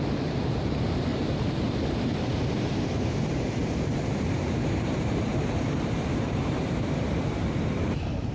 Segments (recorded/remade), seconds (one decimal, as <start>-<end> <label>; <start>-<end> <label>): 0.0-8.3 remade